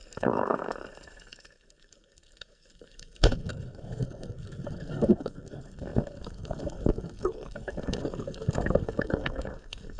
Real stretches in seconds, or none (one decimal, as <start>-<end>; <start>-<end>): none